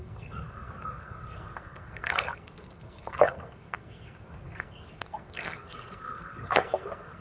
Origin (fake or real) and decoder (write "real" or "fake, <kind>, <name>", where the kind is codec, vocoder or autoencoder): fake, codec, SNAC